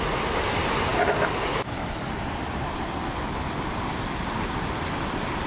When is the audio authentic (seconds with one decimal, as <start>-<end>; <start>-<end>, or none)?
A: 0.0-5.5